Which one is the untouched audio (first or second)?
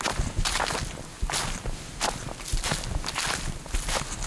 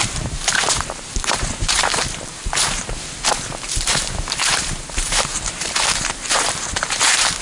first